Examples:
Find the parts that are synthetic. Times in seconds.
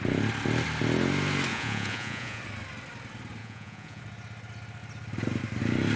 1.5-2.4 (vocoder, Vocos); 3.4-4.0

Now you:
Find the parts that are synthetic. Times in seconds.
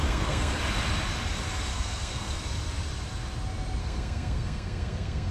0.0-0.6 (codec, SNAC); 1.7-2.4; 3.8-5.3